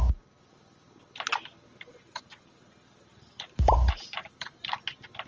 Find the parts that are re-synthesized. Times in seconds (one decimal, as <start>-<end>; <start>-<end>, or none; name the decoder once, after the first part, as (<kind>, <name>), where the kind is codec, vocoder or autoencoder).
1.9-4.7 (vocoder, BigVGAN v2)